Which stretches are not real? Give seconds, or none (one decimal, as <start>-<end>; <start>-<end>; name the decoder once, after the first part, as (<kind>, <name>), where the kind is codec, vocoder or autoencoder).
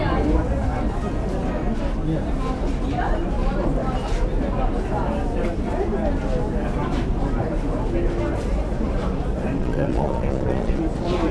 9.6-10.8 (vocoder, Vocos)